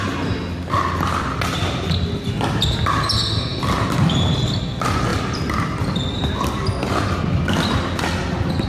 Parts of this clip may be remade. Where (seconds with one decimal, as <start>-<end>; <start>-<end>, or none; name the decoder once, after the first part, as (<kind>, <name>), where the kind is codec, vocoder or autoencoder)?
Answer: none